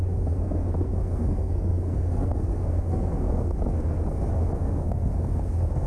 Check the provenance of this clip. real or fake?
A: fake